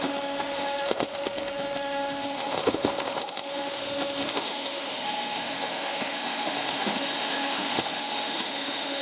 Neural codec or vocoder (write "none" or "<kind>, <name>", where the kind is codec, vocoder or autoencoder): autoencoder, DAC-VAE